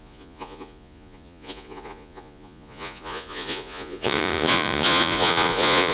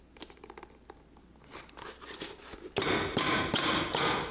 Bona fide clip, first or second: second